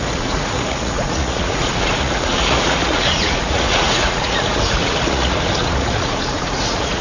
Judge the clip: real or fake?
fake